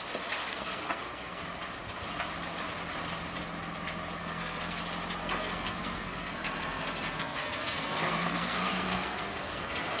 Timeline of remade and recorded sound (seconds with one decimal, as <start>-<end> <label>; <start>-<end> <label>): 0.0-0.4 recorded; 0.4-1.4 remade; 1.4-4.2 recorded; 4.2-4.8 remade; 4.8-5.2 recorded; 5.2-10.0 remade

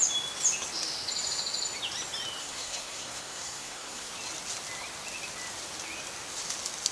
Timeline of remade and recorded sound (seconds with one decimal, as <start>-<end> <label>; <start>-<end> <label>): 0.0-2.4 recorded; 2.4-4.1 remade; 4.1-6.9 recorded

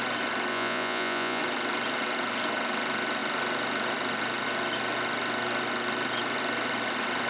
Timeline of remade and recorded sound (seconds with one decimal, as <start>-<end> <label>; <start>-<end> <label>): 0.0-0.5 recorded; 0.5-1.4 remade; 1.4-7.3 recorded

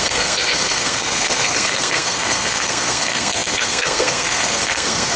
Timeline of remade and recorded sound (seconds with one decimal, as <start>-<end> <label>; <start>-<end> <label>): 0.0-5.2 remade

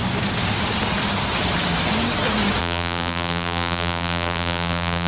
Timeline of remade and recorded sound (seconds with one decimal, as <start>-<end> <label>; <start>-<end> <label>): 0.0-2.6 recorded; 2.6-5.1 remade

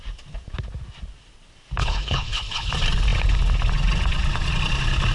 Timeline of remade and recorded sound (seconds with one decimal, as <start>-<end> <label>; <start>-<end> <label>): 0.0-1.8 recorded; 1.8-2.7 remade; 2.7-5.1 recorded